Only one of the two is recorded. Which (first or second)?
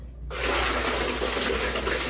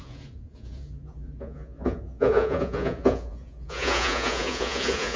first